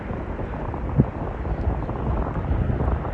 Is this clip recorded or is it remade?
recorded